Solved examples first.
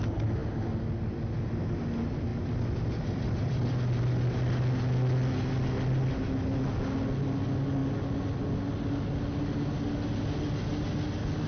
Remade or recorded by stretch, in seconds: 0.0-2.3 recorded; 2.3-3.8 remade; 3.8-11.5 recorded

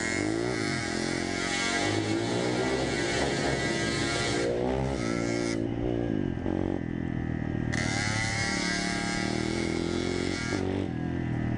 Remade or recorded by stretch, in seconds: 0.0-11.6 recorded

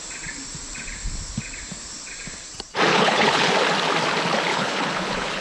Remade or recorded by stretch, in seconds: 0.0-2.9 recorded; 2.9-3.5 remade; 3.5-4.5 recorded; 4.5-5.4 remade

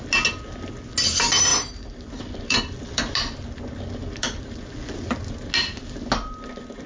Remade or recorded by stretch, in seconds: 0.0-1.5 recorded; 1.5-3.1 remade; 3.1-6.9 recorded

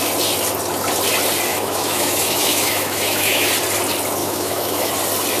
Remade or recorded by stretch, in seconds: 0.0-1.5 recorded; 1.5-3.5 remade; 3.5-4.2 recorded; 4.2-4.9 remade; 4.9-5.4 recorded

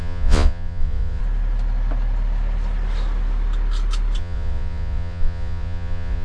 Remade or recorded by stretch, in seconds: 0.0-1.2 remade; 1.2-4.2 recorded; 4.2-6.2 remade

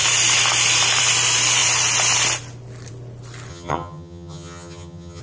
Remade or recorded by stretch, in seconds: 0.0-3.5 recorded; 3.5-5.2 remade

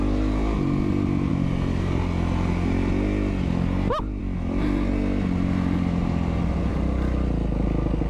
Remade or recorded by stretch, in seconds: 0.0-8.1 recorded